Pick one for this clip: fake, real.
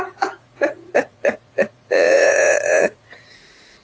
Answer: fake